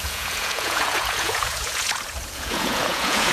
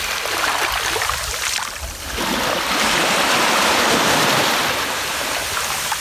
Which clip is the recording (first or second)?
second